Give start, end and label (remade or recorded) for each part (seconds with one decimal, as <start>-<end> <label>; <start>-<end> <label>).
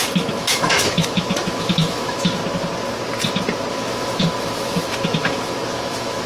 0.0-2.4 remade; 2.4-3.7 recorded; 3.7-6.3 remade